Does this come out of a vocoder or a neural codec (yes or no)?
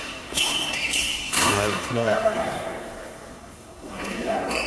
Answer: yes